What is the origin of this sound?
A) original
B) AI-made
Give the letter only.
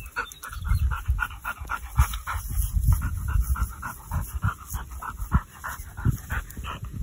A